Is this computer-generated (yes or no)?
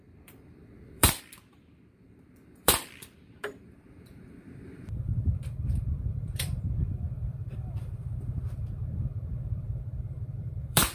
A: yes